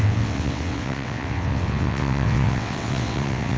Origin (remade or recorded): remade